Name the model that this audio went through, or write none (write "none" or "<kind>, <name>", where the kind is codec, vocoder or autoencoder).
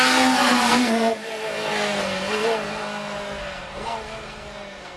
codec, SNAC